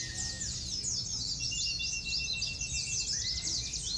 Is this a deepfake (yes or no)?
no